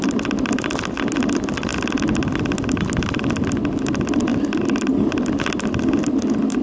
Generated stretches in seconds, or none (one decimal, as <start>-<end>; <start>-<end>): none